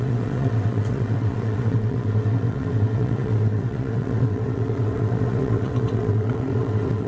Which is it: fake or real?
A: fake